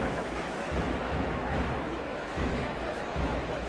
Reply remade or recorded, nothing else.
remade